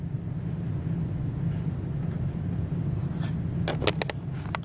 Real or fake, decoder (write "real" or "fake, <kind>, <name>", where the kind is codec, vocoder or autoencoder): real